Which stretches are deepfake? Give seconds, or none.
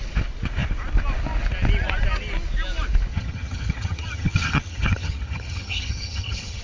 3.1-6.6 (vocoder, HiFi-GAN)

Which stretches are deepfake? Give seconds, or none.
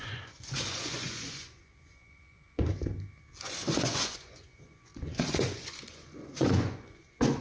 0.0-2.7 (vocoder, Vocos); 3.4-7.4